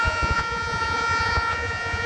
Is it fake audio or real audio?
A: fake